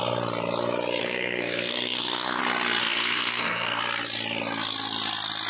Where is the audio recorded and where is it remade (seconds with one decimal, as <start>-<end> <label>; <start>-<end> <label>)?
0.0-1.0 recorded; 1.0-2.4 remade; 2.4-2.8 recorded; 2.8-3.8 remade; 3.8-5.5 recorded